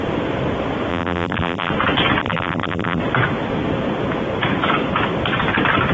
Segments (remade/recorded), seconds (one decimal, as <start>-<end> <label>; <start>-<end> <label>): 0.0-0.9 recorded; 0.9-1.7 remade; 1.7-2.2 recorded; 2.2-3.0 remade; 3.0-5.9 recorded